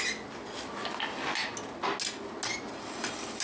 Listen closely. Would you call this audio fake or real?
real